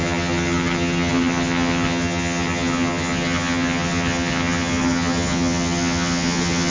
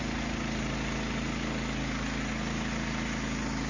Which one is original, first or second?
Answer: second